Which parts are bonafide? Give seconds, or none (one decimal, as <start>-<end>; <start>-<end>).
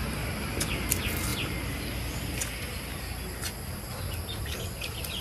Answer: 0.0-5.2